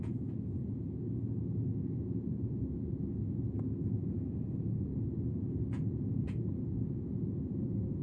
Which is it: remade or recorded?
remade